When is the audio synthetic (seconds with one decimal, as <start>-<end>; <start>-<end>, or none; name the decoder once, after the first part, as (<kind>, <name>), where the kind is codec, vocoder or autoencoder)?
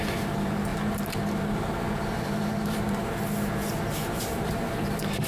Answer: 0.0-3.0 (vocoder, BigVGAN v2); 3.7-5.3